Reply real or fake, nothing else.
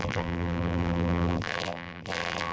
fake